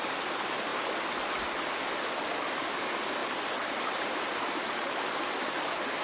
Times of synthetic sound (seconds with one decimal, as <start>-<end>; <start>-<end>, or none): none